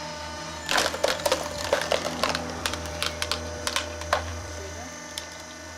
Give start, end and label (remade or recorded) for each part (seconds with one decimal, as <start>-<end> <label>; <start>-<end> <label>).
0.0-1.0 recorded; 1.0-2.9 remade; 2.9-4.3 recorded; 4.3-5.2 remade; 5.2-5.8 recorded